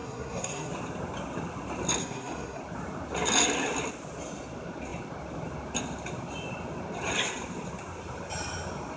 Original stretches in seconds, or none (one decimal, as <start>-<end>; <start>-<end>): 0.7-2.0; 2.6-9.0